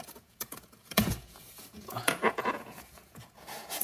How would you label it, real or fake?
fake